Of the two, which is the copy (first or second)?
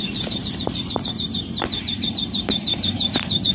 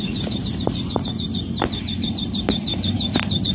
first